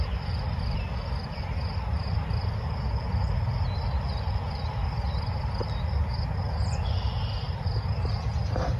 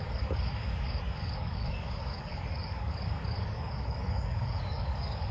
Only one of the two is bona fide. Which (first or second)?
first